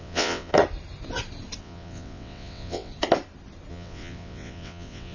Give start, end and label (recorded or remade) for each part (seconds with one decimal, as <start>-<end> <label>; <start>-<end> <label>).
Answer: 0.0-0.5 remade; 0.5-1.6 recorded; 1.6-2.9 remade; 2.9-3.7 recorded; 3.7-5.1 remade